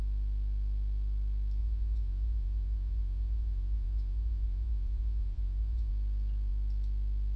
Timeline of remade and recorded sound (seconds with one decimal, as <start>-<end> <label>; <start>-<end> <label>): 0.0-1.6 recorded; 1.6-5.9 remade; 5.9-7.4 recorded